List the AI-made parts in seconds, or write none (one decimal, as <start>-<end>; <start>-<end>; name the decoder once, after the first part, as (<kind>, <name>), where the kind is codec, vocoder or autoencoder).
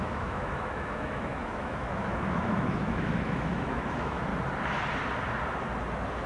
0.0-4.3 (autoencoder, DAC-VAE)